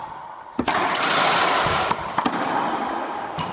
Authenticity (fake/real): real